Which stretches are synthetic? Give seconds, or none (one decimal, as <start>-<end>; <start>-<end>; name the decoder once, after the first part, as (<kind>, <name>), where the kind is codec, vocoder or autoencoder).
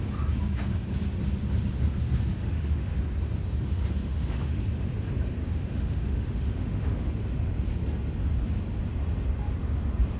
2.4-3.0 (autoencoder, DAC-VAE); 4.0-4.6; 5.4-7.1